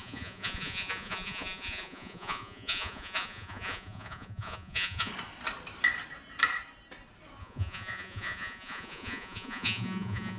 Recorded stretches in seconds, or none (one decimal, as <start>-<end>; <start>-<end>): 5.1-7.4